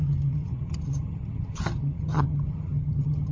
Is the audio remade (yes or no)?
yes